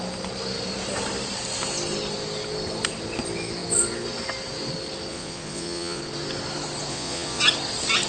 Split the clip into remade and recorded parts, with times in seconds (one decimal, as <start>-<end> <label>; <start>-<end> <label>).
0.0-5.1 recorded; 5.1-6.0 remade; 6.0-6.9 recorded; 6.9-7.4 remade; 7.4-8.1 recorded